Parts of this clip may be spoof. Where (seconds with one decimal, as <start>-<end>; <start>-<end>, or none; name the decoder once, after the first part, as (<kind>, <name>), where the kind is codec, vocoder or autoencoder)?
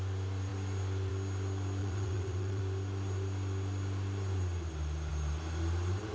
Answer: 1.8-2.6 (vocoder, WaveNeXt)